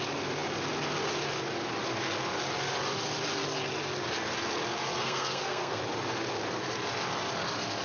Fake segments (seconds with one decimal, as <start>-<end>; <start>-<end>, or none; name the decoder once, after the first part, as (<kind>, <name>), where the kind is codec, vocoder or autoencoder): 5.0-5.8 (codec, SNAC)